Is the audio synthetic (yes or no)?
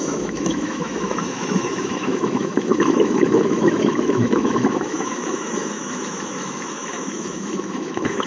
yes